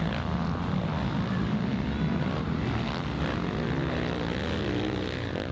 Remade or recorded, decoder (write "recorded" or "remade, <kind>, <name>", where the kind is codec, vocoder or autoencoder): recorded